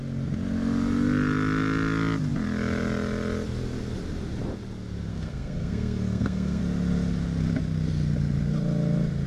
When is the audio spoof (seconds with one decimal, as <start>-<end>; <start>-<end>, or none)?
5.1-6.6